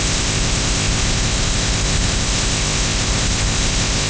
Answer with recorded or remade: remade